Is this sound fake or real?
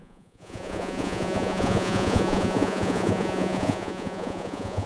fake